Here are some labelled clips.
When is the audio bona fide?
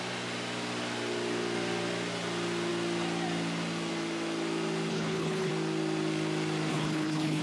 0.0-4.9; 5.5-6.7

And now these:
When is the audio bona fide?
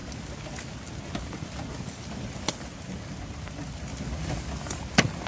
0.0-5.3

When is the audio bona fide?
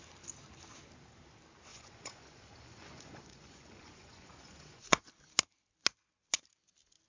0.0-1.7; 5.1-7.1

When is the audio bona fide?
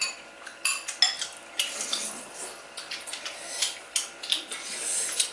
0.0-5.3